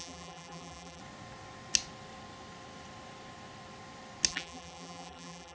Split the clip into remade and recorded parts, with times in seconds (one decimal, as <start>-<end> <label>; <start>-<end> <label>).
0.0-1.0 remade; 1.0-4.3 recorded; 4.3-5.5 remade